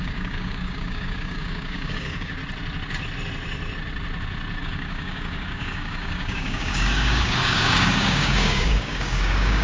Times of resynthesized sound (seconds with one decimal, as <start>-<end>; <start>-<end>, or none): 0.0-2.4; 4.6-9.6